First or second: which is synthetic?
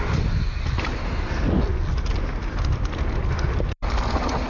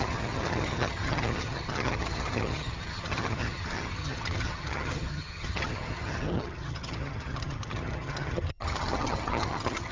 second